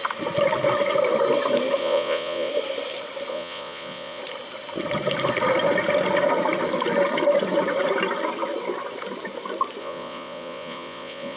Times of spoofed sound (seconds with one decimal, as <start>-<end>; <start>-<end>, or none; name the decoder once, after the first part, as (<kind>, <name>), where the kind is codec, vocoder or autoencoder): 1.8-2.5 (vocoder, Vocos); 3.3-4.2; 9.8-11.4